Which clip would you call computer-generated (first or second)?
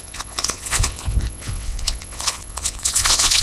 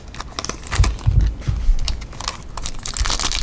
first